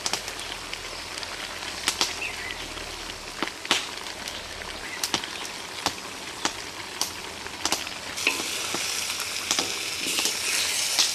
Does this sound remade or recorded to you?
recorded